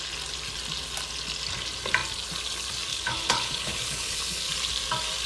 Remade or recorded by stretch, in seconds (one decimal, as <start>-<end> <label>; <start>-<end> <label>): 0.0-2.9 recorded; 2.9-4.5 remade; 4.5-5.3 recorded